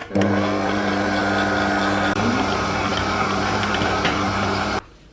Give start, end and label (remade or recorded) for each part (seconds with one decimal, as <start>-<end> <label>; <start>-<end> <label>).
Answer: 0.0-1.2 remade; 1.2-1.8 recorded; 1.8-5.1 remade